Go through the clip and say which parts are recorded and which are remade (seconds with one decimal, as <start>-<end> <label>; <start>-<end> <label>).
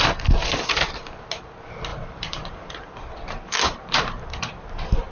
0.0-1.9 recorded; 1.9-5.1 remade